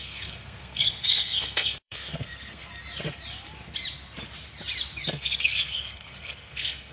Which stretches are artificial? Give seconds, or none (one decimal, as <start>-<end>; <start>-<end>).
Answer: 0.0-2.7; 5.0-6.9